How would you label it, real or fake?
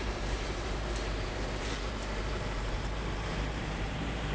fake